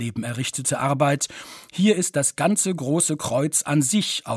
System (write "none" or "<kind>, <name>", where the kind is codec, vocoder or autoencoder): none